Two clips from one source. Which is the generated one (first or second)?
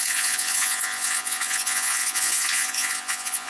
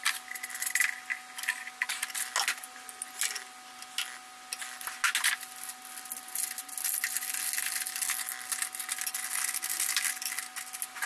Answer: first